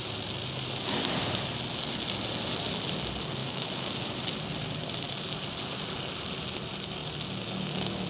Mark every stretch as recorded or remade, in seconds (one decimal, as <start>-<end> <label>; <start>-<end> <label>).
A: 0.0-3.4 recorded; 3.4-3.9 remade; 3.9-8.1 recorded